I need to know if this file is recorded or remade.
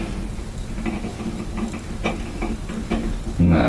recorded